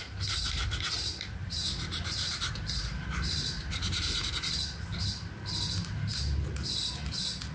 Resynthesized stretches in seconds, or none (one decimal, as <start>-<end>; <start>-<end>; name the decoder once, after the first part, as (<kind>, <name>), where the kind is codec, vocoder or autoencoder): 1.4-4.3 (vocoder, BigVGAN v2)